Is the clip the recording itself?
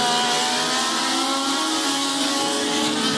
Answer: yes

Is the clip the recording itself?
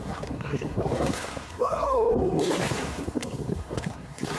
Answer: no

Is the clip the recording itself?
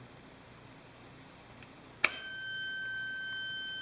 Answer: yes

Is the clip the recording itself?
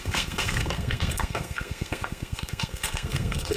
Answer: no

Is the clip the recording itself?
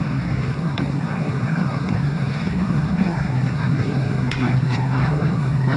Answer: no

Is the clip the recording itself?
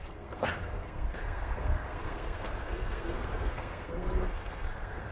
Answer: no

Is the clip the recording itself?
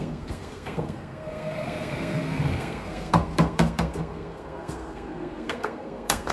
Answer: no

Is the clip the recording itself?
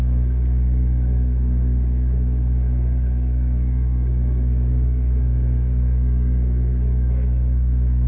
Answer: no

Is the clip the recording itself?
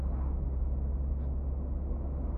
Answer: yes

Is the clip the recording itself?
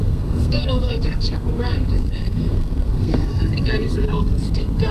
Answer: no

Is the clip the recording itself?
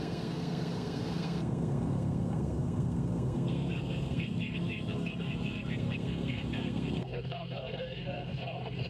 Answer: no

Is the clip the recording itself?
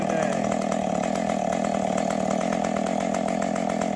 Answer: yes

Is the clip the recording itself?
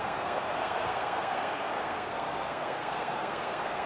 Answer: no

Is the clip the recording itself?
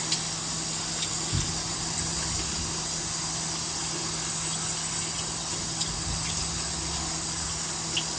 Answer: yes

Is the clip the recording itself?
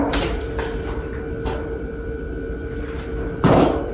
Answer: yes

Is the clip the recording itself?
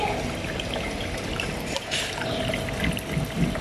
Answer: yes